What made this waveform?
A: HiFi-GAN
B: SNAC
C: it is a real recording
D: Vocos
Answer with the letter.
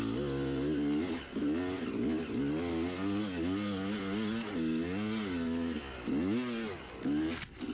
C